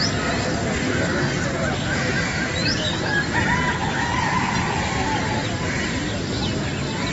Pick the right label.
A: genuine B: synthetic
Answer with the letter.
A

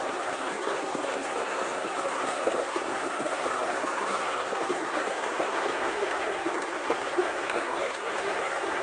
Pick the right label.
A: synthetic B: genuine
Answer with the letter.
A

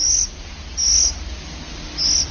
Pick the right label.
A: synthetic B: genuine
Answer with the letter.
B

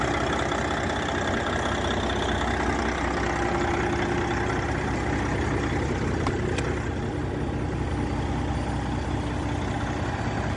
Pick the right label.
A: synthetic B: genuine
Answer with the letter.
B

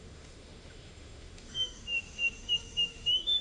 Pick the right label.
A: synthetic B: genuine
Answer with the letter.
A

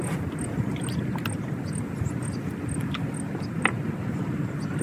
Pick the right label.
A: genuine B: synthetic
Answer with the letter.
A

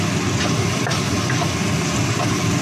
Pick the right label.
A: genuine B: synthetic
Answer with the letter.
A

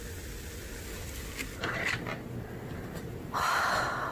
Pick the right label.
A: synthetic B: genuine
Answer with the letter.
B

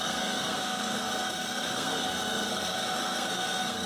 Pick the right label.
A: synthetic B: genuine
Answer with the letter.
A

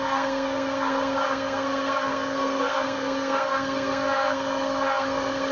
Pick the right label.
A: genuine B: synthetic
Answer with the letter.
B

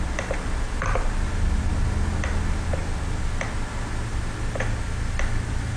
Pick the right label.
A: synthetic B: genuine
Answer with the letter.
B